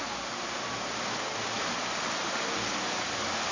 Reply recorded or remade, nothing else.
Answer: recorded